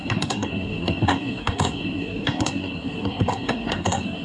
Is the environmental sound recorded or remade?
remade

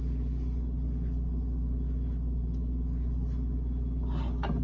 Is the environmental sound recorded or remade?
recorded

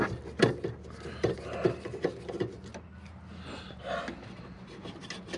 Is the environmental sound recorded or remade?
recorded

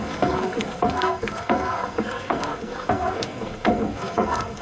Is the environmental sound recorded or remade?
remade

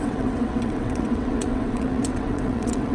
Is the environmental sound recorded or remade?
remade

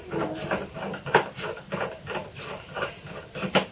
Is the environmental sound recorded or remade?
recorded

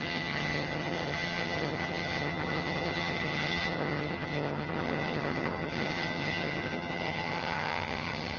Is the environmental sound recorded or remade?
remade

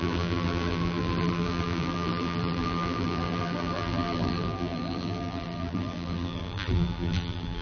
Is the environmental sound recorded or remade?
remade